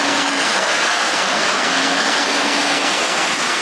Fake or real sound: fake